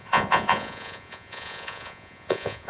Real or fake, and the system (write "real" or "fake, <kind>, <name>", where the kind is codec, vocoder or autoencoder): fake, vocoder, Vocos